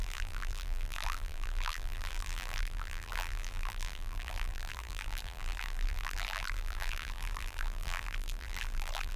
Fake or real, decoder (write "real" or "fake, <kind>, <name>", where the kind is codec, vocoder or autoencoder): fake, vocoder, BigVGAN v2